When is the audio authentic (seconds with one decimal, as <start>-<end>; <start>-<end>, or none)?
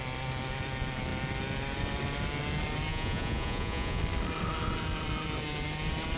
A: 0.0-2.9; 4.0-6.2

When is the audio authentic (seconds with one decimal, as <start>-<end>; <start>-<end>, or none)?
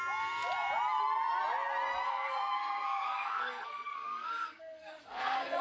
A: 0.0-2.1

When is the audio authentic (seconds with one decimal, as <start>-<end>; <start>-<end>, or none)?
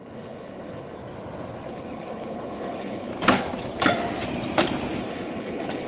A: 1.0-1.7; 3.1-5.0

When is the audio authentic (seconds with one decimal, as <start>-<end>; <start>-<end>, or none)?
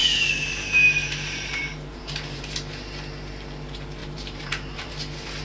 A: 0.5-1.0; 2.1-4.0; 4.9-5.4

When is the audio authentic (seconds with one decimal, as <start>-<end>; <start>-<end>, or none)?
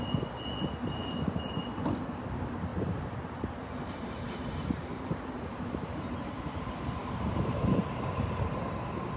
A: 0.0-2.7; 6.4-9.2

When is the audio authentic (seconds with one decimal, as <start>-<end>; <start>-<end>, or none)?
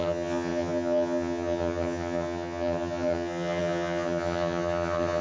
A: none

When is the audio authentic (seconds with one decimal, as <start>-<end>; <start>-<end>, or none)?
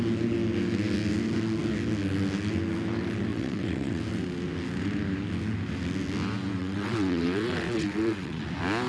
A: 0.0-3.3; 4.0-6.6; 8.4-8.9